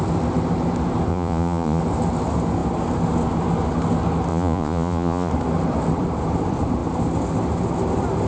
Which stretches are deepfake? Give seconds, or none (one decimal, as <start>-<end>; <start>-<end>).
1.1-1.8; 4.3-5.3